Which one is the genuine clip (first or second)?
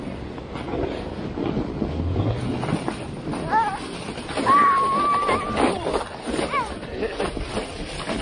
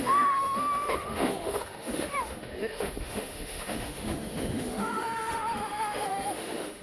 first